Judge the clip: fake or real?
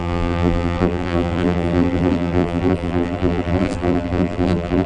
fake